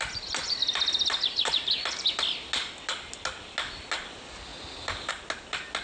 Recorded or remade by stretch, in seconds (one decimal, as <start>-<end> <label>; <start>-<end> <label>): 0.0-5.8 recorded